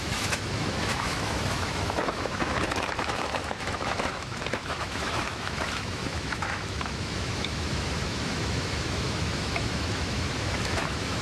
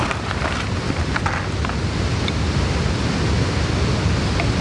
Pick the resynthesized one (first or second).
first